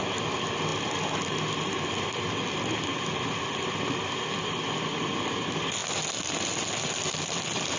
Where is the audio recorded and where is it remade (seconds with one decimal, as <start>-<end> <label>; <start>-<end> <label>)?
0.0-7.8 recorded